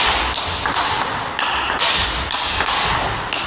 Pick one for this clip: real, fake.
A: real